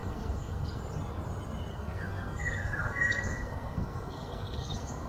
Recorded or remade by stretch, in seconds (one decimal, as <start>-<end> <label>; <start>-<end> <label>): 0.0-0.8 remade; 0.8-1.7 recorded; 1.7-5.1 remade